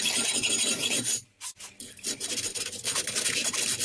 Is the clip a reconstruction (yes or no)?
no